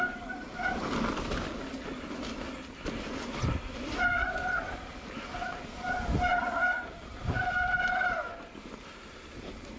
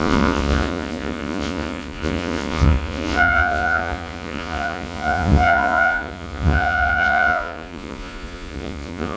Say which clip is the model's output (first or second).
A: second